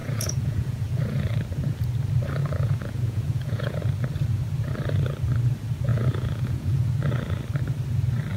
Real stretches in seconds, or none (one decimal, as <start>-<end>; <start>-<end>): 1.0-2.4; 3.8-5.9; 6.9-8.4